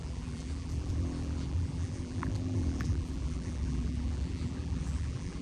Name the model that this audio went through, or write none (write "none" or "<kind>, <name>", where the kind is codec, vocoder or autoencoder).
vocoder, BigVGAN v2